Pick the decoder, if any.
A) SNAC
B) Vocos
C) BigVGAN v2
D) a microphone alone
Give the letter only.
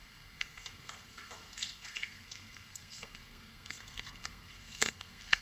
A